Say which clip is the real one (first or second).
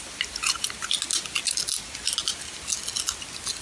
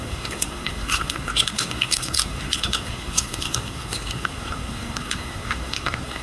first